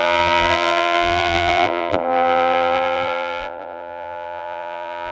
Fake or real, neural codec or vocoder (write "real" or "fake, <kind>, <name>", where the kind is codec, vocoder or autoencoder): fake, vocoder, BigVGAN v2